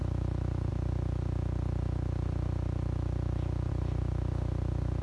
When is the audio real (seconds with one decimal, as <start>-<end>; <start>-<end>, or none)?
0.0-5.0